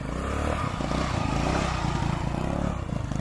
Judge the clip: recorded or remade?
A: recorded